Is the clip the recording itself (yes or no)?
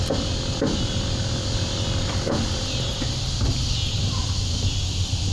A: yes